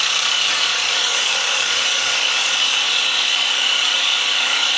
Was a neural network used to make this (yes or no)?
yes